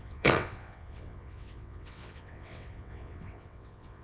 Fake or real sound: fake